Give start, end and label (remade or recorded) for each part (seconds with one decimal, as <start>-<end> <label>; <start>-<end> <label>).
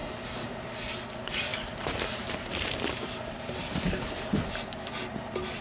0.0-1.5 recorded; 1.5-4.4 remade; 4.4-5.6 recorded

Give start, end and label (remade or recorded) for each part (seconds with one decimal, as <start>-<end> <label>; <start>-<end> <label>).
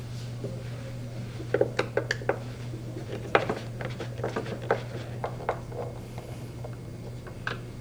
0.0-3.0 recorded; 3.0-4.2 remade; 4.2-7.8 recorded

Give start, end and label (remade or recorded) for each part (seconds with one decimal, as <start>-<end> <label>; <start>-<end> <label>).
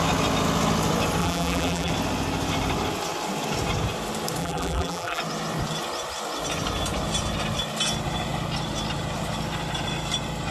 0.0-1.2 recorded; 1.2-1.9 remade; 1.9-4.4 recorded; 4.4-5.2 remade; 5.2-10.5 recorded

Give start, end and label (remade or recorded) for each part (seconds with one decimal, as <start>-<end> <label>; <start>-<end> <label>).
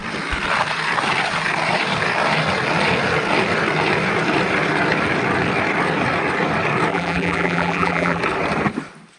0.0-6.9 recorded; 6.9-8.2 remade; 8.2-9.2 recorded